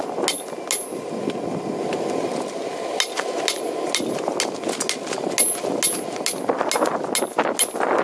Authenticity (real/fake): real